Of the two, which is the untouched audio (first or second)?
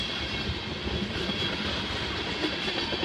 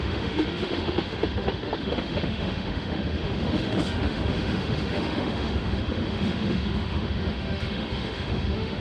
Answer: first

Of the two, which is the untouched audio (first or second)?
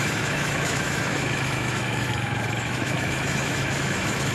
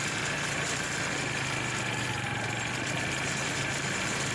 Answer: second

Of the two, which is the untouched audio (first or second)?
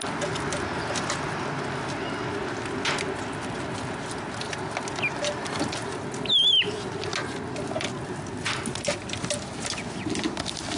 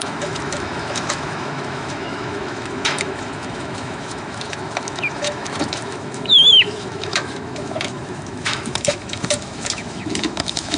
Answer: first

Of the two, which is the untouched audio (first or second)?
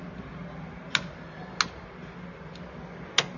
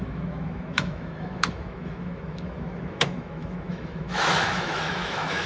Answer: first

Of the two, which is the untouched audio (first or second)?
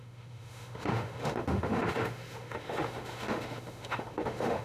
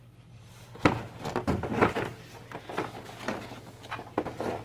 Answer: second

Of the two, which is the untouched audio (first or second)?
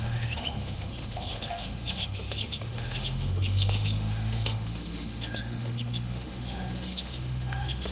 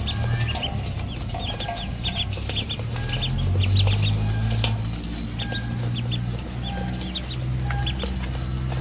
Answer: second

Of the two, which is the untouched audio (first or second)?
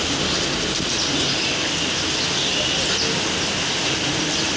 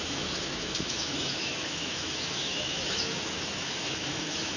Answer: first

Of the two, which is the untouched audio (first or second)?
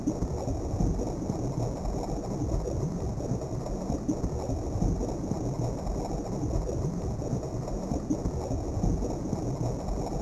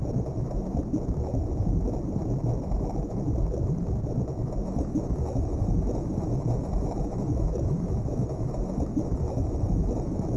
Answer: first